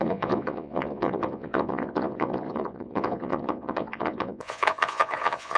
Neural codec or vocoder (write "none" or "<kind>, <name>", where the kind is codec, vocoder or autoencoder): vocoder, Vocos